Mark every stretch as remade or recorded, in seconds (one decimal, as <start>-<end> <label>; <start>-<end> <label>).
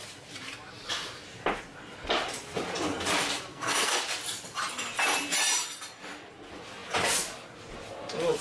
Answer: 0.0-3.5 recorded; 3.5-4.0 remade; 4.0-8.4 recorded